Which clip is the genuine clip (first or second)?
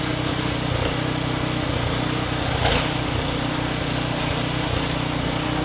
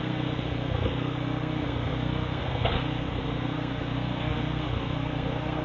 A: first